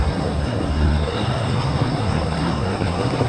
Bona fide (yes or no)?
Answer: no